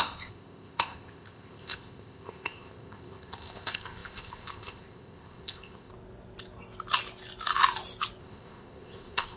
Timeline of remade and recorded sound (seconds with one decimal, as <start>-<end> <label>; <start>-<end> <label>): 0.0-5.9 remade; 5.9-8.2 recorded; 8.2-9.4 remade